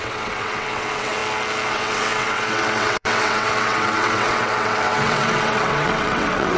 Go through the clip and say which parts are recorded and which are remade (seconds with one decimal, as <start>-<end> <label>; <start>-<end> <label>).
0.0-1.2 remade; 1.2-1.7 recorded; 1.7-6.6 remade